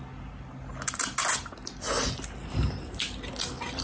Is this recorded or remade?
recorded